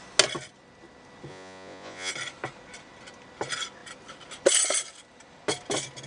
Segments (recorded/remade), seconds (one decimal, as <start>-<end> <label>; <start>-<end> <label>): 0.0-1.3 recorded; 1.3-2.1 remade; 2.1-6.1 recorded